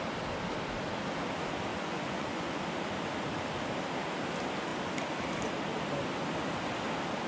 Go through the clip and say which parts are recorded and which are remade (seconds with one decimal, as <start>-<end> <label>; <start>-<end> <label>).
0.0-1.7 recorded; 1.7-2.6 remade; 2.6-7.3 recorded